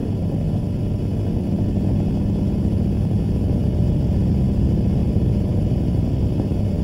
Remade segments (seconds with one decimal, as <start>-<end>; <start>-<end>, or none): 5.0-5.6